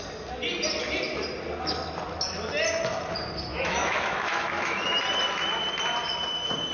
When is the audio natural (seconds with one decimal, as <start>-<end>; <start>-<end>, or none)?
0.0-3.5; 5.0-6.7